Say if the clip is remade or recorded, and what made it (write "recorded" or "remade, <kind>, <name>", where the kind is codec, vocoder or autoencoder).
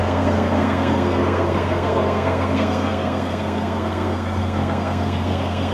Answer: remade, codec, SNAC